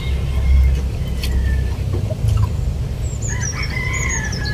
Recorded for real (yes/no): yes